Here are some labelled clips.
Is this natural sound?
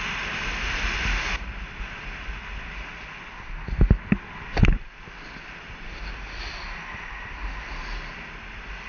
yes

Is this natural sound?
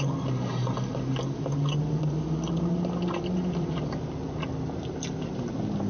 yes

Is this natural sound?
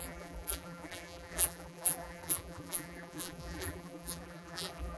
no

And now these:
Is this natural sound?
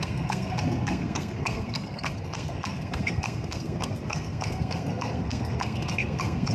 no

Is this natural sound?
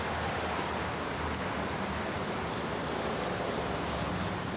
yes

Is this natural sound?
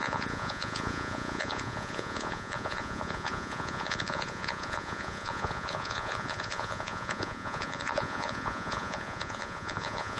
no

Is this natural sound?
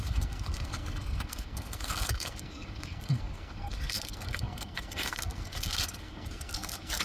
no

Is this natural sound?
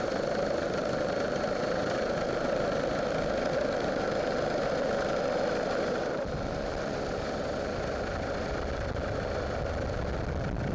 yes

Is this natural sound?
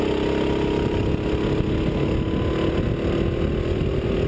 yes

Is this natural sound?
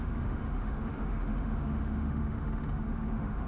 no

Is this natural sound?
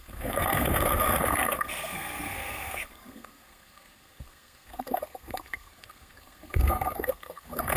no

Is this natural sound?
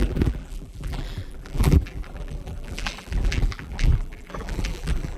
no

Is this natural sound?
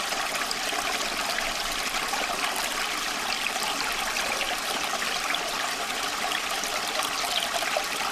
yes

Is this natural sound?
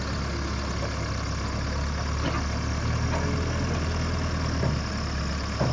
yes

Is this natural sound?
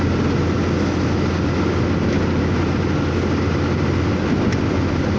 yes